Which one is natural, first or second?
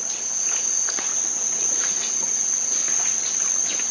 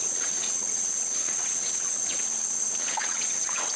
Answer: first